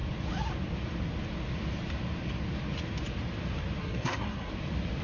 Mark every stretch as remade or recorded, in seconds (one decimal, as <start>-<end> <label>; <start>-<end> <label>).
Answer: 0.0-3.8 recorded; 3.8-4.5 remade; 4.5-5.0 recorded